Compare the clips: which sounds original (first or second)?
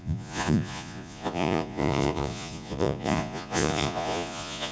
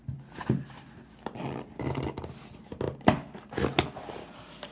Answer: second